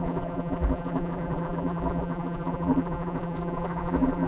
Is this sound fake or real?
fake